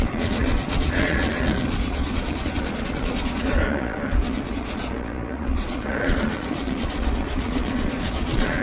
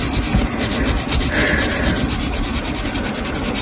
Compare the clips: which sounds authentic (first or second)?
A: second